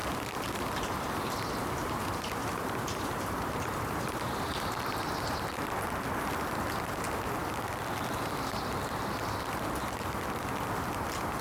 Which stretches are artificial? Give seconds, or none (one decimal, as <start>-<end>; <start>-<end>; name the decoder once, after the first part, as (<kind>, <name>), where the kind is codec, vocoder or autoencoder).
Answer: 0.0-5.1 (vocoder, BigVGAN v2)